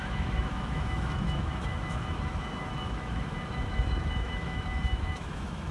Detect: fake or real fake